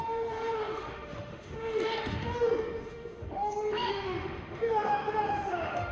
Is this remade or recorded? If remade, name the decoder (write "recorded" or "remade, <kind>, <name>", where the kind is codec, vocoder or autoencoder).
remade, autoencoder, DAC-VAE